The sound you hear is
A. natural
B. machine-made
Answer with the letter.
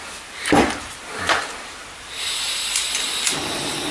A